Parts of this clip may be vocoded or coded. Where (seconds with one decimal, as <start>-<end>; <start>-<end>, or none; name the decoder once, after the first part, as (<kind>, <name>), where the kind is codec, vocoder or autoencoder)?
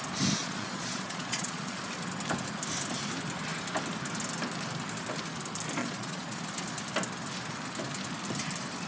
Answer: 0.4-1.8 (vocoder, Vocos); 5.8-6.4